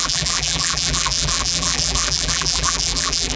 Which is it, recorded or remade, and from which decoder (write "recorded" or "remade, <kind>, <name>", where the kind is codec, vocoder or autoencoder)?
remade, vocoder, BigVGAN v2